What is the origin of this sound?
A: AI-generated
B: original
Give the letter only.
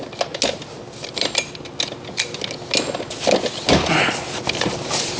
B